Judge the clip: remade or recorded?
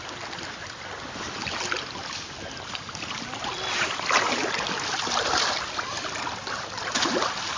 recorded